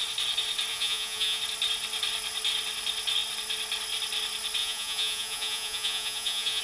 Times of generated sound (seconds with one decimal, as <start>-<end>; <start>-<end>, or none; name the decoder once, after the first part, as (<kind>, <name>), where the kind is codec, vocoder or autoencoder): 0.7-1.4 (vocoder, Vocos); 4.6-6.6